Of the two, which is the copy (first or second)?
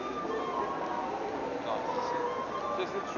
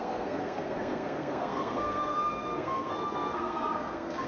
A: second